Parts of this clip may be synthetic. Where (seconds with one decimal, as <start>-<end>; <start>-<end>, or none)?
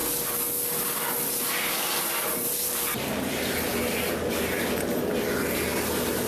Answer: 2.3-3.4; 5.7-6.3